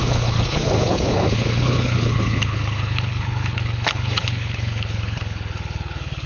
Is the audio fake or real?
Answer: fake